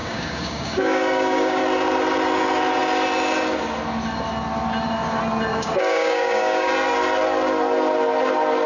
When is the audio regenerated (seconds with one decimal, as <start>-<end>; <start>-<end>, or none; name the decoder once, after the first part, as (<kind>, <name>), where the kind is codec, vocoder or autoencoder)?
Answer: 0.0-1.6 (codec, DAC); 5.5-6.7